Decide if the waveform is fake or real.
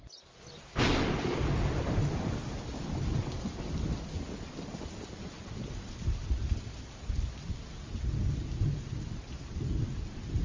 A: real